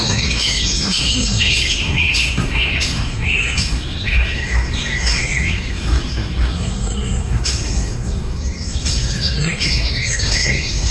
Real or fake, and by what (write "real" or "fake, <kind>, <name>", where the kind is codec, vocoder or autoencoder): fake, codec, SNAC